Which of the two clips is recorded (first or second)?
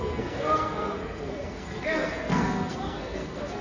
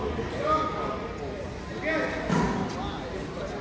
second